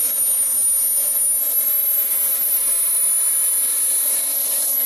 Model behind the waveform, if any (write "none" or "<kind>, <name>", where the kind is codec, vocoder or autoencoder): none